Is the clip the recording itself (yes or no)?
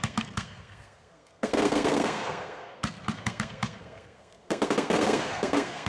no